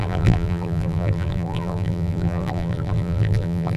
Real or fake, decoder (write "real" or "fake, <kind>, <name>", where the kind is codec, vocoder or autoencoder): fake, vocoder, BigVGAN v2